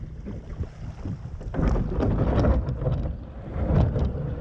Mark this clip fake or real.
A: real